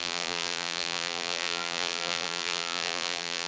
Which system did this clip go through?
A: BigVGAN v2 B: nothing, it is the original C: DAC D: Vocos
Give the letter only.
A